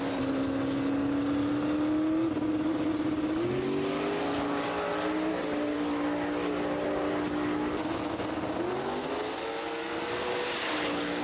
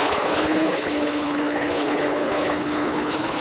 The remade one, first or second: second